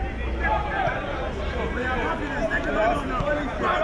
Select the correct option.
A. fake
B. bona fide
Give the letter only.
B